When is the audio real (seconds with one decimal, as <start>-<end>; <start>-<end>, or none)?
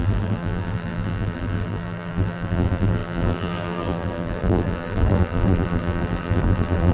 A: none